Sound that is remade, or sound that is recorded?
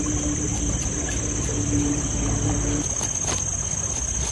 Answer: recorded